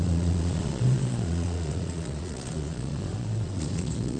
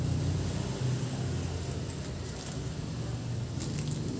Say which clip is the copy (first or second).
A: first